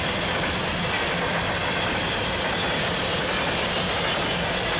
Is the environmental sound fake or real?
real